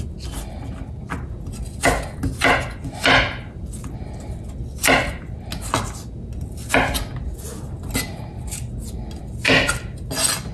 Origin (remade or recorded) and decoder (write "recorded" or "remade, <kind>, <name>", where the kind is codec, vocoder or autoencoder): recorded